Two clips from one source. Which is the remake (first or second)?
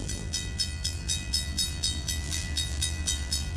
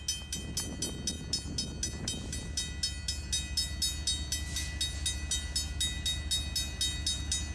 first